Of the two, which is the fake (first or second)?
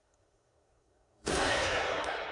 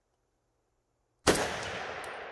first